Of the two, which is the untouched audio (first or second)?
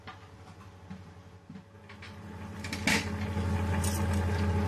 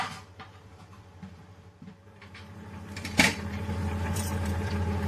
first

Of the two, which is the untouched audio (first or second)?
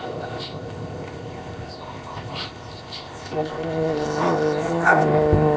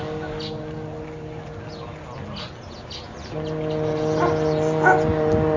second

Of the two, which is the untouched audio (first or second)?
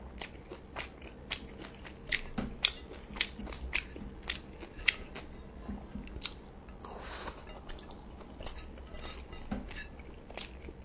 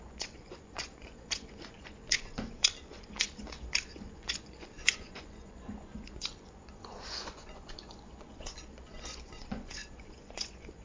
first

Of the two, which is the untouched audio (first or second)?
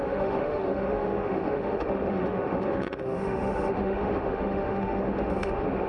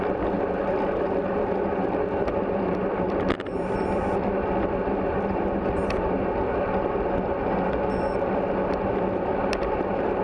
second